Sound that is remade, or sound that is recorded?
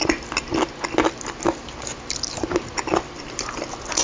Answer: recorded